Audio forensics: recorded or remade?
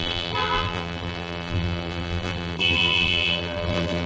remade